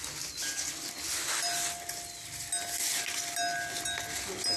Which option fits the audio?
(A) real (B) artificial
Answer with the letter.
A